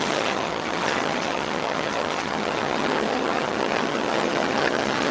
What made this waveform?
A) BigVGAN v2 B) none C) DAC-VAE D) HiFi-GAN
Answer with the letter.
D